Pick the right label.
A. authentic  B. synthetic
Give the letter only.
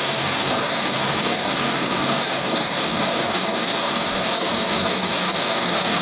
B